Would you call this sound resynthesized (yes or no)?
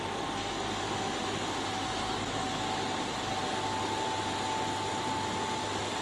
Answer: no